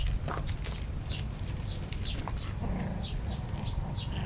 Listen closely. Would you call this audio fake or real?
real